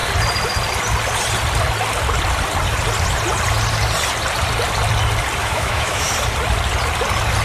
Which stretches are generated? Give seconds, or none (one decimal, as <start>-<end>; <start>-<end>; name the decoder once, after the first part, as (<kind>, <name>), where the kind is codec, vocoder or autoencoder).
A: 5.4-6.1 (autoencoder, DAC-VAE)